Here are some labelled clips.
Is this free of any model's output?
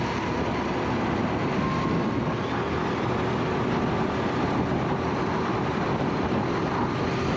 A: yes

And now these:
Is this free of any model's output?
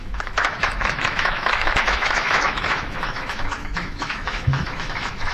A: no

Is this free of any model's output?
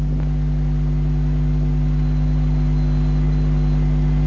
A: yes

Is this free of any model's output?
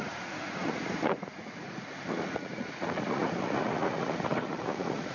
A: no